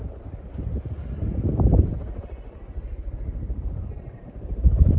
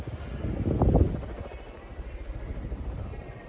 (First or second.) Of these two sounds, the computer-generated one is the first